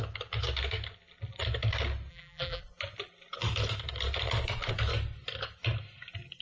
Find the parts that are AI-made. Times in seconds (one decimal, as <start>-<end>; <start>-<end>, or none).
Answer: 2.1-2.6